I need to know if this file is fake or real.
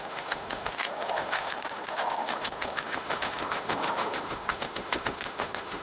fake